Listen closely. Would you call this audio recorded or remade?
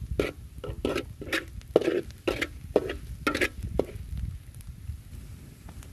recorded